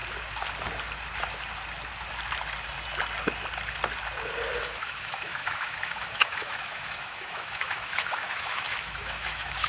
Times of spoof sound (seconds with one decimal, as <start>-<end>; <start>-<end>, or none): 4.6-9.7